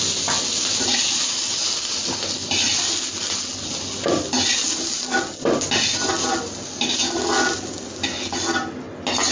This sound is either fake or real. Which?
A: real